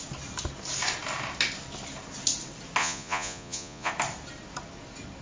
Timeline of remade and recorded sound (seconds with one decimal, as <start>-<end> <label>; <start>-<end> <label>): 0.0-2.8 recorded; 2.8-3.9 remade; 3.9-5.2 recorded